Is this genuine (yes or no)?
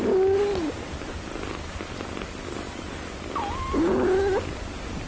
yes